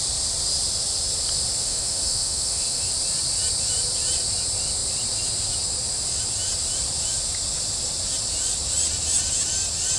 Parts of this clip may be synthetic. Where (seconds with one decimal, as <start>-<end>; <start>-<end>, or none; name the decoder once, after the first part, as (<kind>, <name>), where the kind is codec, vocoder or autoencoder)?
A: 1.6-2.9 (autoencoder, DAC-VAE)